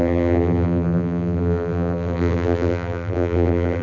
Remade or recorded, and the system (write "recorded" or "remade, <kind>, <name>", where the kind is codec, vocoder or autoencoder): remade, vocoder, BigVGAN v2